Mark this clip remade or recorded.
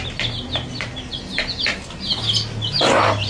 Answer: recorded